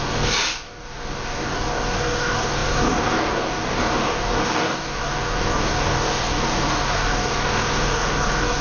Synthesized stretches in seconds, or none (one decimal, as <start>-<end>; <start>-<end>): 0.0-8.6